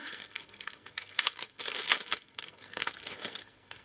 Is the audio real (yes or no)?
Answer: no